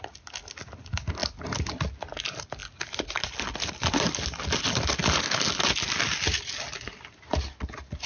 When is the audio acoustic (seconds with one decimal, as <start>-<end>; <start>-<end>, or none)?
0.0-8.1